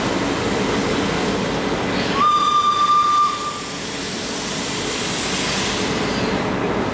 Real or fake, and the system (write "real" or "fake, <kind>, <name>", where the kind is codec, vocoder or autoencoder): real